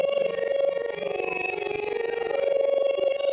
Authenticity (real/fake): fake